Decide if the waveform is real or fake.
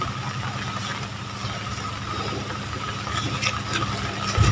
real